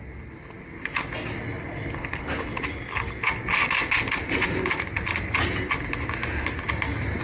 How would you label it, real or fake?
real